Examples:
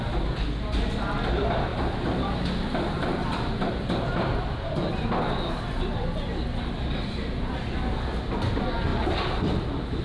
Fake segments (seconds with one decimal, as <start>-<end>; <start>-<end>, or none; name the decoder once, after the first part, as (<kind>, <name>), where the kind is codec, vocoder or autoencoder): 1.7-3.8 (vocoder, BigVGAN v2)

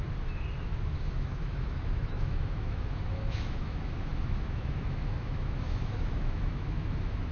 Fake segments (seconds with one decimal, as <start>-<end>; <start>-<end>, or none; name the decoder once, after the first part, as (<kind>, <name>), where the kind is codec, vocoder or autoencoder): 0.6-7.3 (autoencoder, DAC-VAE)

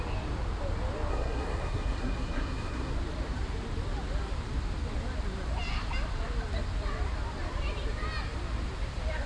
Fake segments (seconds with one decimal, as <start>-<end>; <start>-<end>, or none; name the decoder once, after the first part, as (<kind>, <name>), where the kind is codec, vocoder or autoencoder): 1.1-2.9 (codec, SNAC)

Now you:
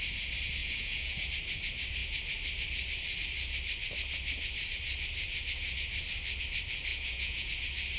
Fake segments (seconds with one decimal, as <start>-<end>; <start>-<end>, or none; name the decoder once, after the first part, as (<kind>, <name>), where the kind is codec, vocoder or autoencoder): 0.6-1.3 (vocoder, Vocos); 6.9-7.5

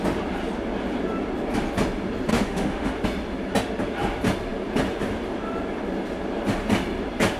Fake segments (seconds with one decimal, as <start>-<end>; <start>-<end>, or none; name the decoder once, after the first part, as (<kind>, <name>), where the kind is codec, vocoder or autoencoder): 2.3-2.9 (autoencoder, DAC-VAE)